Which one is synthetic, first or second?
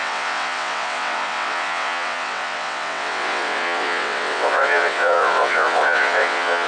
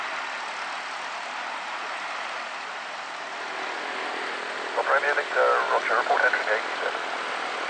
first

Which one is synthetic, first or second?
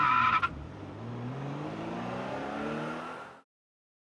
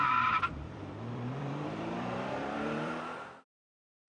second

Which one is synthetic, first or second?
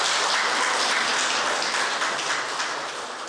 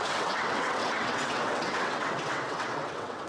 second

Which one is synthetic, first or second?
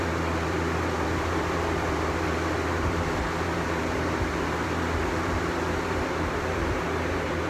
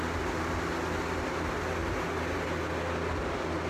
first